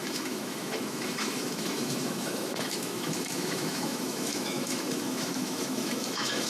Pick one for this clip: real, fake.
fake